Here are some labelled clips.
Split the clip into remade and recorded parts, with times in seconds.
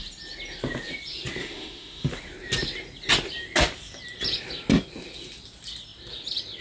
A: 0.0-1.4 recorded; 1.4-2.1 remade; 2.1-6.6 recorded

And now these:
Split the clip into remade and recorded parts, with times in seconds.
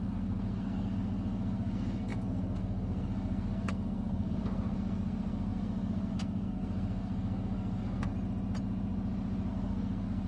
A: 0.0-8.1 remade; 8.1-9.5 recorded; 9.5-10.3 remade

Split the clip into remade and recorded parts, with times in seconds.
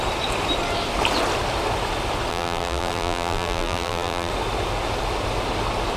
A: 0.0-2.3 recorded; 2.3-4.3 remade; 4.3-6.0 recorded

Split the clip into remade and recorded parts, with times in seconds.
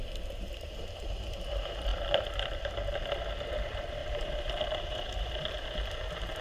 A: 0.0-6.4 remade